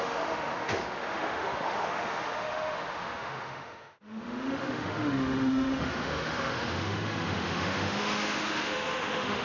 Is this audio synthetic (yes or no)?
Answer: yes